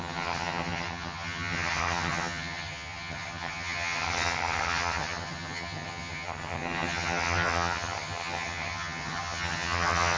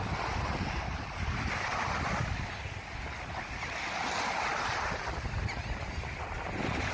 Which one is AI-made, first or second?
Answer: first